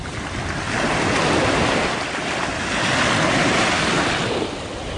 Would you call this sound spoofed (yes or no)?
no